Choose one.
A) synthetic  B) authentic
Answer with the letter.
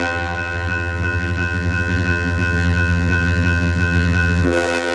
A